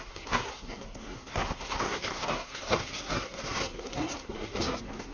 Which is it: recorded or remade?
remade